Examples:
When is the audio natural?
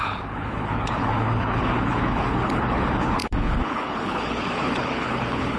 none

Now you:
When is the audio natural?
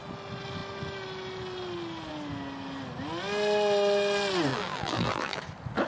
0.0-4.5; 5.4-5.9